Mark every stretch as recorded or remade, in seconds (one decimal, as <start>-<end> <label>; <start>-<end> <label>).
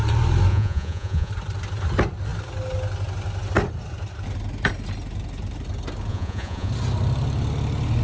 0.0-0.5 recorded; 0.5-1.3 remade; 1.3-6.1 recorded; 6.1-6.7 remade; 6.7-8.0 recorded